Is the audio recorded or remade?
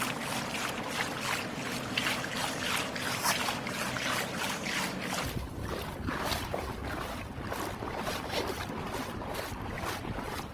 recorded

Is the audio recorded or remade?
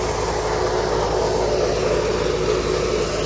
recorded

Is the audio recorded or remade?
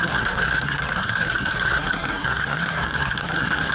remade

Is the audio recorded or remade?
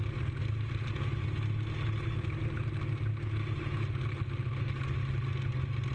recorded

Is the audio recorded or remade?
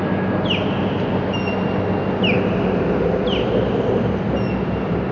recorded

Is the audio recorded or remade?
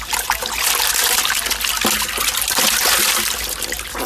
recorded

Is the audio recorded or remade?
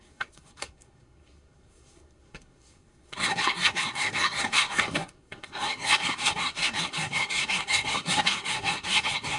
remade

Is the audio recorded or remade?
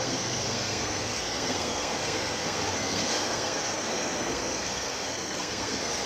remade